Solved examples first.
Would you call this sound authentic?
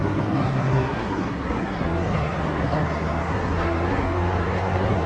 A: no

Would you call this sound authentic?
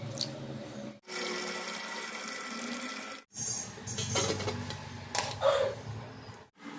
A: yes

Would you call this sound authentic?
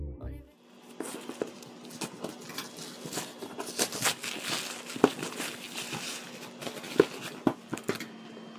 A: yes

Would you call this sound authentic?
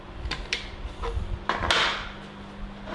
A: yes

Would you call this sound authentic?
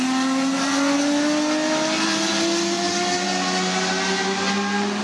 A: yes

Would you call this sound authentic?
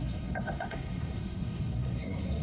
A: no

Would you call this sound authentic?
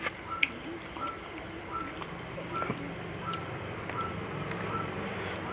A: yes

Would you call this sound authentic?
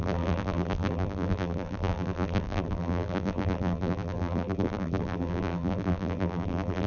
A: no